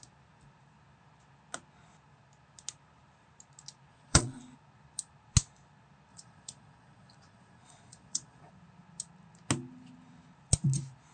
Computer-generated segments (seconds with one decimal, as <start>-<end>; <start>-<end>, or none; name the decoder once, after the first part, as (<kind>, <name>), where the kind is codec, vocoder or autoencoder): 3.9-4.4 (vocoder, Vocos); 6.1-8.5